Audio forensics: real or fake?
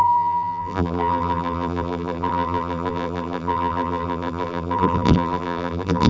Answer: fake